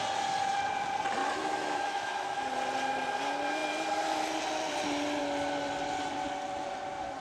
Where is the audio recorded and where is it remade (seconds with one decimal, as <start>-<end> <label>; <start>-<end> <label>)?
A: 0.0-1.2 recorded; 1.2-2.4 remade; 2.4-7.2 recorded